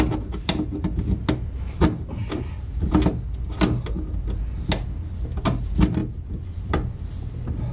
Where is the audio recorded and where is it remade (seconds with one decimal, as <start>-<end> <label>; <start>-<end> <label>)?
0.0-7.7 recorded